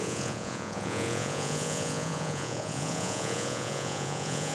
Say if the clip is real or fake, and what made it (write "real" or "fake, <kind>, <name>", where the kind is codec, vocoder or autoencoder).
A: fake, vocoder, Vocos